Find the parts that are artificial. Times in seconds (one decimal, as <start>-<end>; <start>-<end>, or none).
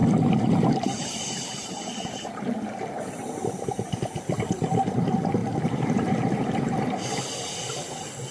0.0-4.0; 5.4-6.8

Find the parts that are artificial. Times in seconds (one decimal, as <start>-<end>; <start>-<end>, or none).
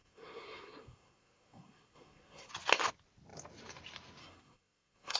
0.0-2.5; 4.2-5.2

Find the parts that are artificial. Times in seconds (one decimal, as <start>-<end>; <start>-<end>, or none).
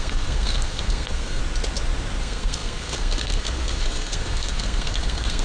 0.0-1.4; 2.2-5.4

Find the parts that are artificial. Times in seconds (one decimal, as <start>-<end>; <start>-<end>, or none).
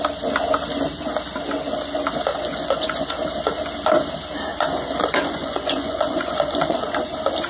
2.3-3.1; 4.5-6.8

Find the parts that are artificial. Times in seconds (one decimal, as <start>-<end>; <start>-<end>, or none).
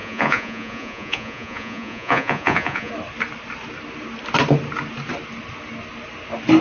0.0-2.9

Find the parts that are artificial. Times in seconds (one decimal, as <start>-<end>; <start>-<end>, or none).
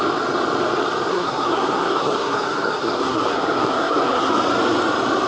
1.1-4.3